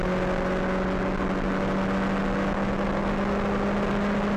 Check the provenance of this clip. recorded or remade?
recorded